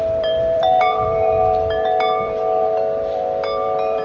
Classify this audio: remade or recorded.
remade